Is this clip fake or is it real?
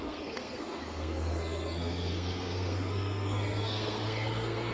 fake